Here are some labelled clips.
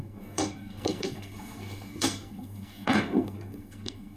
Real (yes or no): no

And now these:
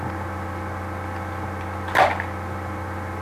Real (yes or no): yes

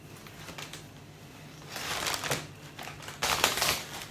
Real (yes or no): yes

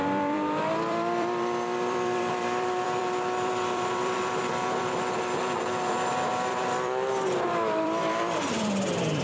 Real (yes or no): no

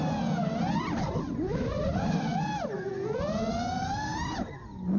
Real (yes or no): yes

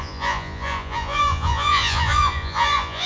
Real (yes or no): no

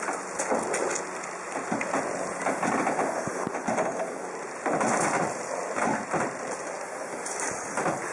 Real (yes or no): yes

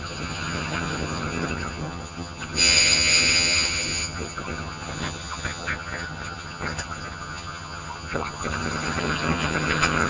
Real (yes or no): no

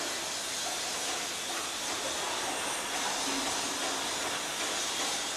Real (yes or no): yes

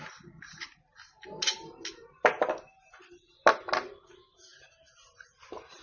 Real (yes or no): yes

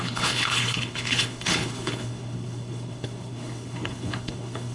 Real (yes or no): no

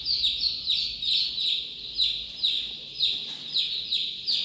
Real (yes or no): yes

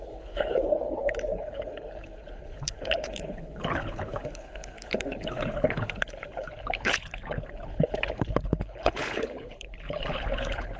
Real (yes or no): no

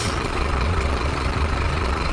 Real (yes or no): no